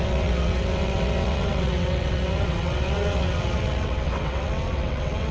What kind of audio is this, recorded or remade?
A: remade